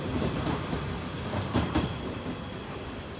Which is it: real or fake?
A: fake